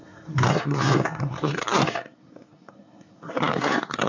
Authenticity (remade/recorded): remade